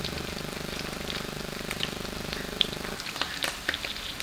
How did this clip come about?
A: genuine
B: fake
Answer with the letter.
B